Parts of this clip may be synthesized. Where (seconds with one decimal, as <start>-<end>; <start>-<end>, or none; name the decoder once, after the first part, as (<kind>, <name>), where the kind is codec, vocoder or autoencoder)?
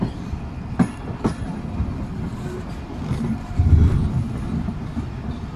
none